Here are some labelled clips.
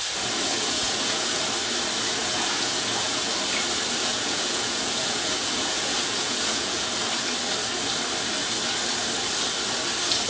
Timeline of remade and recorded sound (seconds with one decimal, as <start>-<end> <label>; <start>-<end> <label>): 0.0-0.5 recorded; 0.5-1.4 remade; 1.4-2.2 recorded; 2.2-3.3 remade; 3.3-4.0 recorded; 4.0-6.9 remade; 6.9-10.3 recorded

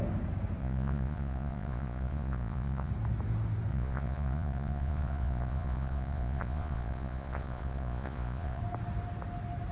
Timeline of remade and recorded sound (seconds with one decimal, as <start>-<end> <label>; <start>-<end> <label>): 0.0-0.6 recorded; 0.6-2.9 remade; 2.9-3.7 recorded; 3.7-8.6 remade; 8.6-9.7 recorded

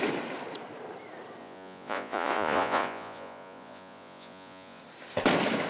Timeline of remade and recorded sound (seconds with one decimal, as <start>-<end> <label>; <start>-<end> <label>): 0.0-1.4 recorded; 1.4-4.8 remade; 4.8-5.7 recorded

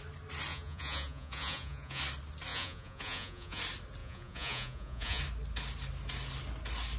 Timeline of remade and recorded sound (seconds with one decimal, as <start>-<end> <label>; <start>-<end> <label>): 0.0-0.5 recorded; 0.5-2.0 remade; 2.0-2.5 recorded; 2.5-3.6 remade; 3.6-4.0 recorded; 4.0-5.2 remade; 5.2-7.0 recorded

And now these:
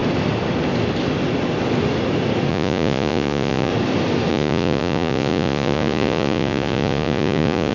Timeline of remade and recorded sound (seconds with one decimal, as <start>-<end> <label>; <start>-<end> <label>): 0.0-2.5 recorded; 2.5-3.7 remade; 3.7-4.3 recorded; 4.3-7.7 remade